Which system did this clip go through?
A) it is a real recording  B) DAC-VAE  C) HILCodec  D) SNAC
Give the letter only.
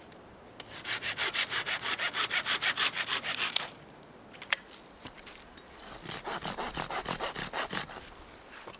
A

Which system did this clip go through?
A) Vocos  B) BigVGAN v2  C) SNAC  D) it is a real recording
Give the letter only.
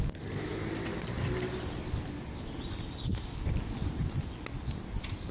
D